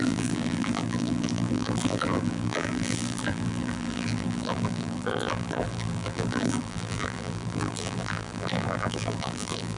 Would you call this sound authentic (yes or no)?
no